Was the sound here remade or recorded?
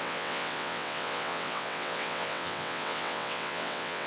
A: remade